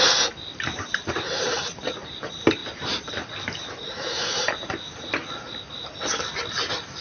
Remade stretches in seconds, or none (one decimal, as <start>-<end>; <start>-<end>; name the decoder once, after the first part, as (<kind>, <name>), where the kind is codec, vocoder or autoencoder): 0.9-1.6 (vocoder, BigVGAN v2); 2.6-5.3